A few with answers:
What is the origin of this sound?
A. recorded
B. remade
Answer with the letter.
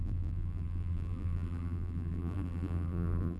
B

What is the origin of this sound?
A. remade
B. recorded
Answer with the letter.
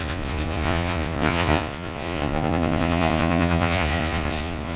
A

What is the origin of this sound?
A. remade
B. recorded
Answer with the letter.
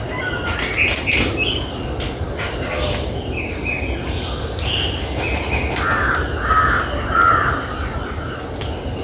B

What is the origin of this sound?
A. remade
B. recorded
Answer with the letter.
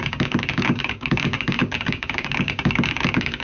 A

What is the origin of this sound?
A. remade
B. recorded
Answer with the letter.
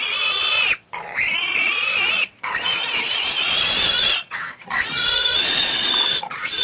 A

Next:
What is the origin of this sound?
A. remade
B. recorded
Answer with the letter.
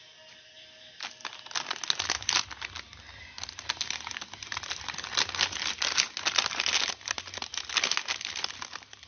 B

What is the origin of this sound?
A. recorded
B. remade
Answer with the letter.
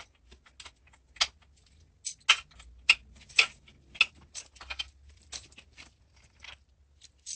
A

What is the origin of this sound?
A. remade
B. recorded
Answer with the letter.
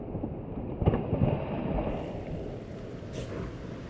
B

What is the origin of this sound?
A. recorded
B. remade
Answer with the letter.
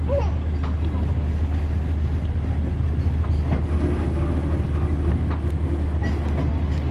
A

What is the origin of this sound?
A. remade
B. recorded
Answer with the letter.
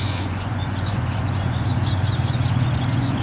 A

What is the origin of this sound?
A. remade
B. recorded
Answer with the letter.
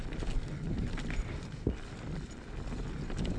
B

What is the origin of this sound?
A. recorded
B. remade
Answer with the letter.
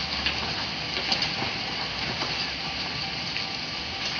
A